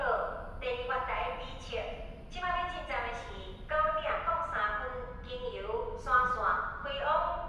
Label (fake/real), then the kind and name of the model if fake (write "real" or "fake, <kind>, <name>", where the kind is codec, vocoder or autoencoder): real